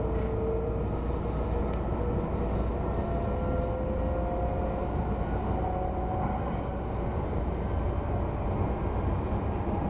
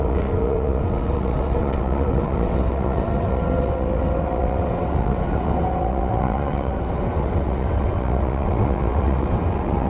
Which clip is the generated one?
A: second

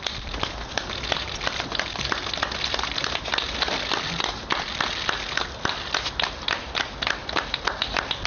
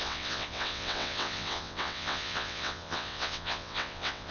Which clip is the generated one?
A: second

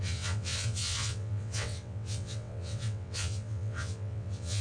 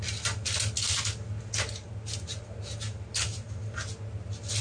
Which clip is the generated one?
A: first